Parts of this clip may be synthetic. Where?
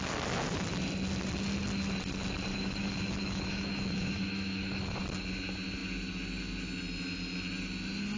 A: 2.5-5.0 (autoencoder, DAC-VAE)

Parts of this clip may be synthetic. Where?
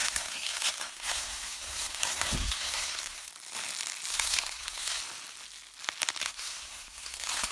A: 0.0-3.3 (codec, SNAC); 4.1-5.0; 6.2-7.5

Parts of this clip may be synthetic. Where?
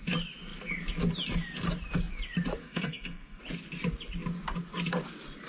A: 2.6-3.4 (codec, SNAC)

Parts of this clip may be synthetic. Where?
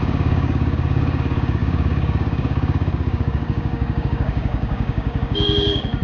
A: 0.0-6.0 (codec, DAC)